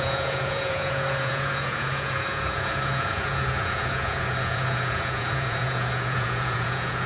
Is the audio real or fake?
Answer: fake